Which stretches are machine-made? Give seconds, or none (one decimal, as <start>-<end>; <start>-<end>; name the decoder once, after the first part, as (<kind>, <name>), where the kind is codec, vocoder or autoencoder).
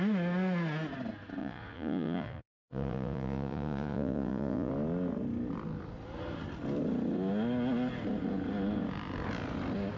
1.4-4.7 (vocoder, Vocos)